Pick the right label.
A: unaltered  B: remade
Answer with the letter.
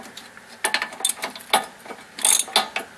A